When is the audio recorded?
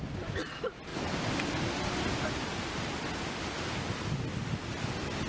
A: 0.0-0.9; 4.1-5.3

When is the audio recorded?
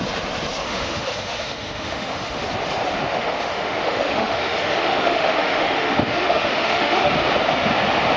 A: 0.0-0.6; 2.4-3.1; 7.1-8.2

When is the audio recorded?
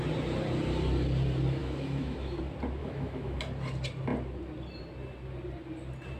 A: 0.0-1.6; 2.4-2.8; 3.4-6.2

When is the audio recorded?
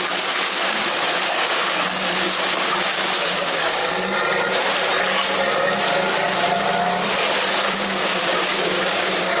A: 3.8-7.5